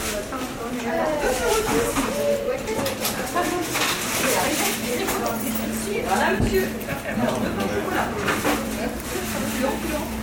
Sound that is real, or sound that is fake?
fake